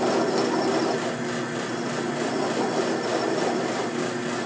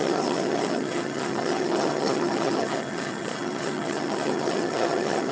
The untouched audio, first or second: first